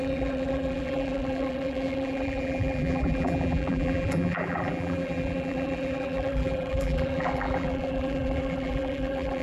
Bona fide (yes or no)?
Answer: no